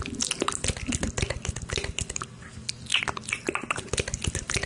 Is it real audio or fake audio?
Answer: real